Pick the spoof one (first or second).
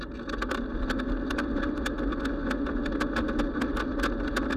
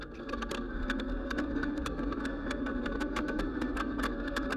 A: second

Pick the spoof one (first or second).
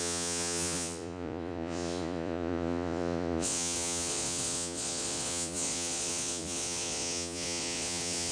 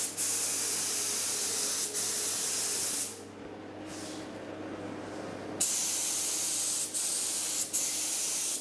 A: first